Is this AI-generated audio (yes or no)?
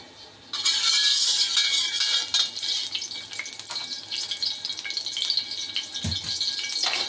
no